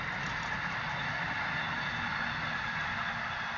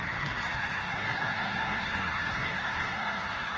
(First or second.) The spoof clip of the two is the second